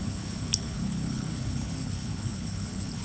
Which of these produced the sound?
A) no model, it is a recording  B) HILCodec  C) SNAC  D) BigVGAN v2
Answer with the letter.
B